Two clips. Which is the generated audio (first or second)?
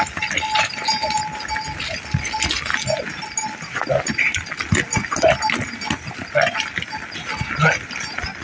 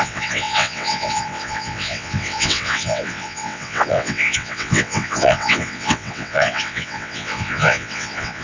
second